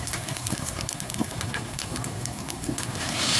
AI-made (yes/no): yes